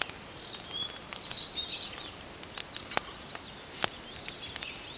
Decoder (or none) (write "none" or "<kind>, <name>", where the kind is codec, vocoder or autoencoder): none